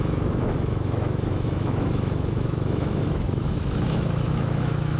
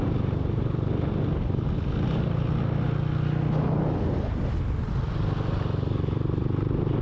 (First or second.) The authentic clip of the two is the second